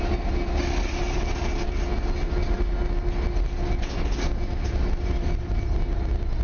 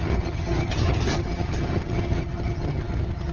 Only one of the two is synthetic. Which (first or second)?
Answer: second